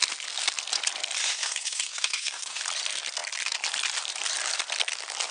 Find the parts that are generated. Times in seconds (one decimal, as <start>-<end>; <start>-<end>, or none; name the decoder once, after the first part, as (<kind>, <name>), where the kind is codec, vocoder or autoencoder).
1.2-2.6 (codec, SNAC)